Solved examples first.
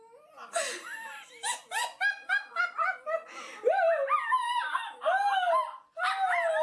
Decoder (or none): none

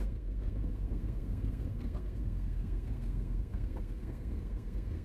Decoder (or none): codec, SNAC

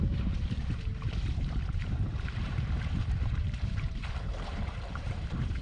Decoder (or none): vocoder, BigVGAN v2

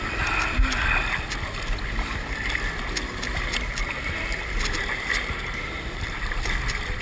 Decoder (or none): none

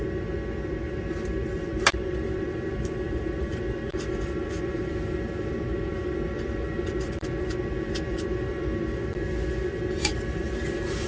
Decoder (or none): vocoder, BigVGAN v2